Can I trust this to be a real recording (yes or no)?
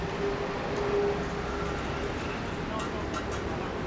yes